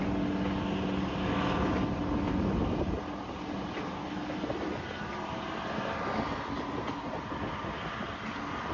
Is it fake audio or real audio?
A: real